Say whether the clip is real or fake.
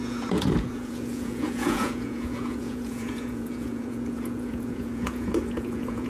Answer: fake